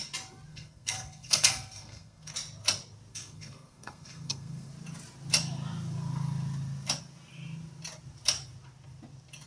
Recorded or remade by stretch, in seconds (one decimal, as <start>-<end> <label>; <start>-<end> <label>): 0.0-0.5 recorded; 0.5-2.3 remade; 2.3-3.1 recorded; 3.1-4.7 remade; 4.7-9.5 recorded